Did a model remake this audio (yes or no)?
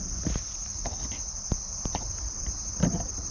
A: no